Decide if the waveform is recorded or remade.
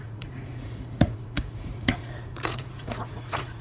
remade